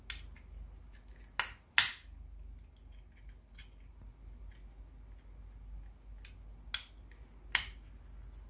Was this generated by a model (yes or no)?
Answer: no